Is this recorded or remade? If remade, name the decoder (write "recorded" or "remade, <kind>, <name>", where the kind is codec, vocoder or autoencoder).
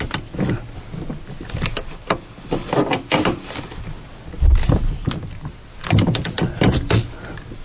recorded